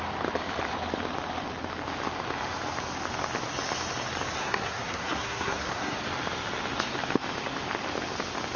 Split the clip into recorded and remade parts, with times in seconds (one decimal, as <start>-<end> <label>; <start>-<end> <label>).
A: 0.0-4.4 recorded; 4.4-6.0 remade; 6.0-8.6 recorded